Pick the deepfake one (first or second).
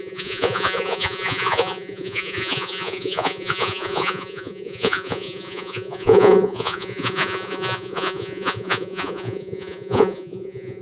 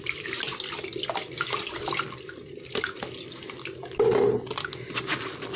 first